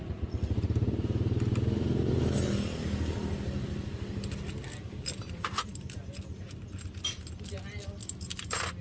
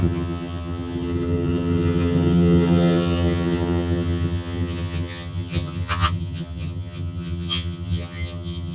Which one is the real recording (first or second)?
first